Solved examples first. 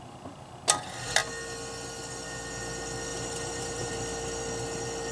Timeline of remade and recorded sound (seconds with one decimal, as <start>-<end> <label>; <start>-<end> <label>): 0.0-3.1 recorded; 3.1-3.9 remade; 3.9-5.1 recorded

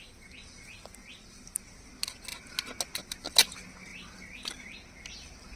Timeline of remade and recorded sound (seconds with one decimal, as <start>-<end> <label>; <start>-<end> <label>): 0.0-1.0 recorded; 1.0-1.6 remade; 1.6-3.9 recorded; 3.9-4.5 remade; 4.5-5.6 recorded

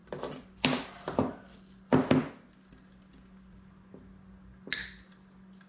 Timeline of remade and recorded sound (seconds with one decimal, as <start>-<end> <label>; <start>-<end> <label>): 0.0-5.7 recorded